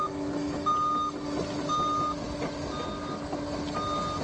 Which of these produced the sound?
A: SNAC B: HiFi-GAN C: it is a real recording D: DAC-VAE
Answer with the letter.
C